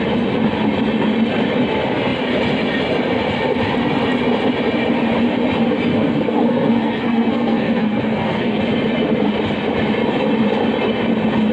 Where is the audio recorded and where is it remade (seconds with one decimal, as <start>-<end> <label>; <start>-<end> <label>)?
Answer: 0.0-5.9 recorded; 5.9-8.6 remade; 8.6-11.5 recorded